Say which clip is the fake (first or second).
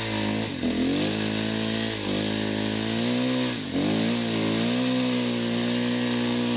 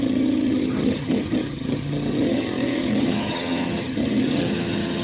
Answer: second